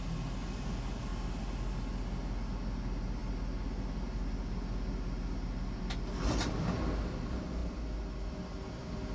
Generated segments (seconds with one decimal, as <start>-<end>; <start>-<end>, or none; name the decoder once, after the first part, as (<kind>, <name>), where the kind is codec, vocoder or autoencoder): none